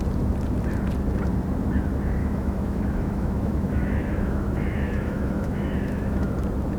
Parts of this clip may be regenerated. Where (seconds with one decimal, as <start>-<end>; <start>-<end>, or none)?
2.2-6.3